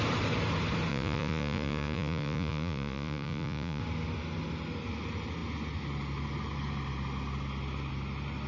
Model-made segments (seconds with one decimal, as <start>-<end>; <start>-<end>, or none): 0.9-3.8